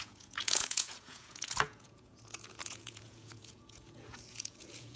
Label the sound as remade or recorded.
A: remade